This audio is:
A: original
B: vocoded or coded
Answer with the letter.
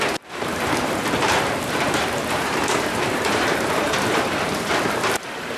B